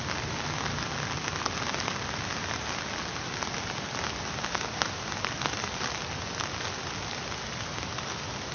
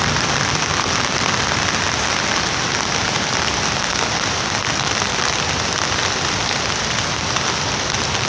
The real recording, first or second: first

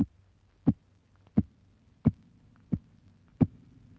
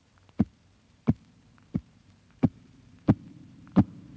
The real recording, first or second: first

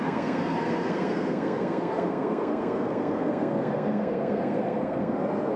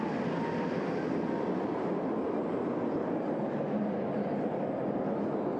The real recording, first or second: second